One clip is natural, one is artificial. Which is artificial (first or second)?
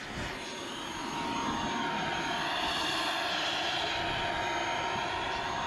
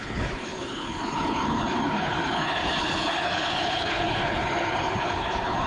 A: second